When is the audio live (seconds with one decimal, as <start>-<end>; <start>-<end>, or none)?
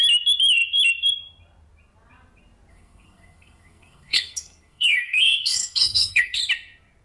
0.0-2.7; 6.4-7.0